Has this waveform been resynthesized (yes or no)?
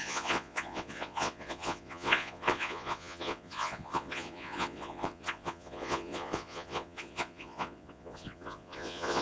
yes